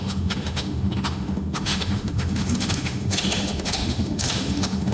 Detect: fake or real fake